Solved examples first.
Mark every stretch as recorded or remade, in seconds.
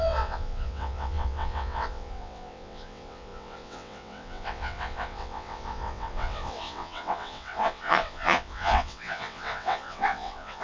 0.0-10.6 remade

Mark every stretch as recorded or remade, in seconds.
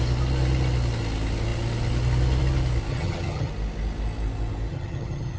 0.0-2.9 recorded; 2.9-3.5 remade; 3.5-4.7 recorded; 4.7-5.4 remade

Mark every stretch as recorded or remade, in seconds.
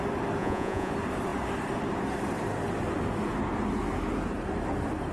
0.0-0.4 recorded; 0.4-0.9 remade; 0.9-5.1 recorded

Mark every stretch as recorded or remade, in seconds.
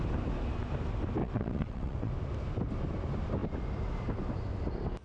0.0-1.2 recorded; 1.2-2.1 remade; 2.1-5.0 recorded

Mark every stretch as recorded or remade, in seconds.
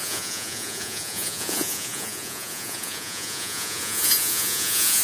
0.0-5.0 remade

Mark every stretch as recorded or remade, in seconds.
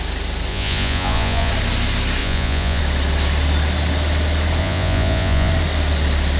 0.0-0.5 recorded; 0.5-1.5 remade; 1.5-2.2 recorded; 2.2-2.8 remade; 2.8-4.6 recorded; 4.6-5.5 remade; 5.5-6.4 recorded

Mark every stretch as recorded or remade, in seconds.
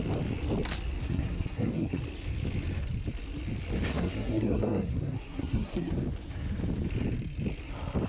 0.0-1.0 recorded; 1.0-2.0 remade; 2.0-3.9 recorded; 3.9-5.9 remade; 5.9-8.1 recorded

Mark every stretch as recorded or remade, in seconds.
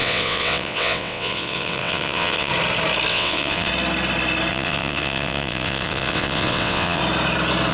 0.0-2.5 remade; 2.5-3.1 recorded; 3.1-3.7 remade; 3.7-4.5 recorded; 4.5-7.0 remade; 7.0-7.7 recorded